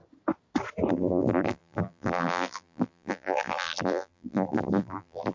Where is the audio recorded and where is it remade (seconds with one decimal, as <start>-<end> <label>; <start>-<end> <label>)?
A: 0.0-0.9 recorded; 0.9-5.3 remade